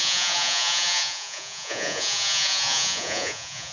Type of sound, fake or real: fake